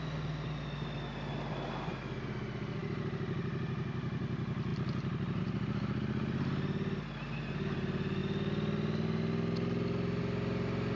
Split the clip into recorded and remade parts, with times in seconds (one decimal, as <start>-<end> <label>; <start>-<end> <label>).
0.0-11.0 recorded